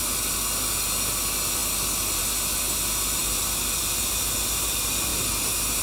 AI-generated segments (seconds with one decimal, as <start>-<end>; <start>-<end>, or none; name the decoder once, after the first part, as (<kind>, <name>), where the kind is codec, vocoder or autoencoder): 5.1-5.8 (vocoder, BigVGAN v2)